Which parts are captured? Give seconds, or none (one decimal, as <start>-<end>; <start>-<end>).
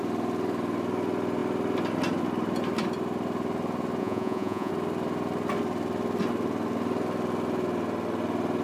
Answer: 0.0-4.0; 4.7-8.6